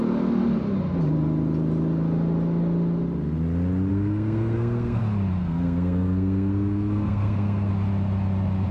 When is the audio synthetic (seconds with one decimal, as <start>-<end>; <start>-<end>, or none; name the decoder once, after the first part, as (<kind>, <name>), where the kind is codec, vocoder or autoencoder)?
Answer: 3.9-5.0 (codec, SNAC); 5.4-7.7